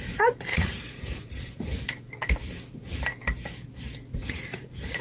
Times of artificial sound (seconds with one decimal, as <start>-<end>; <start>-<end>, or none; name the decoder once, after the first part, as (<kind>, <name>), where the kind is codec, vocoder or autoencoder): 0.5-1.7 (vocoder, Vocos); 4.1-5.0